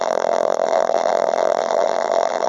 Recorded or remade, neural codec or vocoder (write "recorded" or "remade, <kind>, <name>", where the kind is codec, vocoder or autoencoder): remade, vocoder, BigVGAN v2